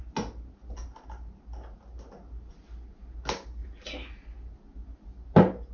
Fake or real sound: real